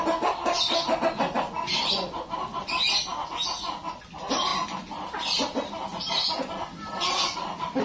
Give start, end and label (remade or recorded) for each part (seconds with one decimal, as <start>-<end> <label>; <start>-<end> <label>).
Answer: 0.0-7.8 recorded